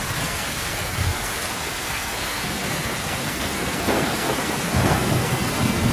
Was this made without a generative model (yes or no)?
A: no